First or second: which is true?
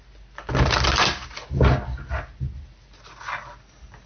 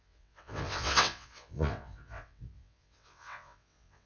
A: first